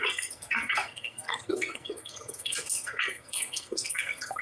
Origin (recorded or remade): remade